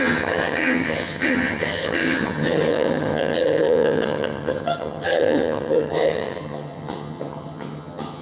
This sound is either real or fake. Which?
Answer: fake